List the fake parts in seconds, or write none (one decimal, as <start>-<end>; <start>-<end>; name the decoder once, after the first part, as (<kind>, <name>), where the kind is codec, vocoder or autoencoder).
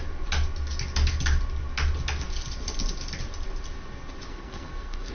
4.3-5.1 (codec, SNAC)